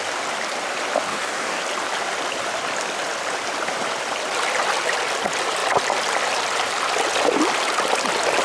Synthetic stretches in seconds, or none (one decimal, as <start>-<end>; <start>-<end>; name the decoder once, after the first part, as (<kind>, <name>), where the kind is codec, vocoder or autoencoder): 1.1-1.6 (codec, DAC)